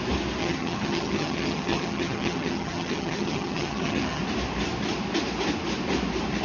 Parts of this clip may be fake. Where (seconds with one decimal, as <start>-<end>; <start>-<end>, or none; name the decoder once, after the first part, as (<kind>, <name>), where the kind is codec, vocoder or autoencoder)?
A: 0.4-4.2 (vocoder, HiFi-GAN)